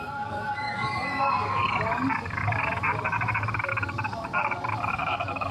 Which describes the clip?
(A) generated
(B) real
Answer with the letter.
A